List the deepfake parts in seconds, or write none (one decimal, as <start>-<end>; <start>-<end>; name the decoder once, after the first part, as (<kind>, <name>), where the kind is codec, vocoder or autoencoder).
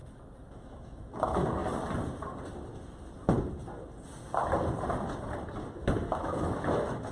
0.5-1.6 (autoencoder, DAC-VAE); 5.7-7.1